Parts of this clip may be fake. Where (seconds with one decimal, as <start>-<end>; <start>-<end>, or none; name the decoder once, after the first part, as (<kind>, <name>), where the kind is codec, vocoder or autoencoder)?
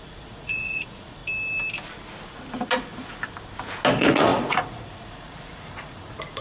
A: 0.0-1.2 (vocoder, Vocos); 3.9-6.4